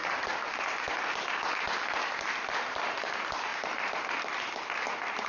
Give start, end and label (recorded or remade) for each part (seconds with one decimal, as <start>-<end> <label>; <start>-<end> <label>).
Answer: 0.0-5.3 recorded